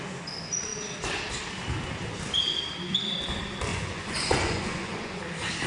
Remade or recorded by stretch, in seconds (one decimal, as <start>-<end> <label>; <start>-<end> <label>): 0.0-3.7 recorded; 3.7-5.2 remade; 5.2-5.7 recorded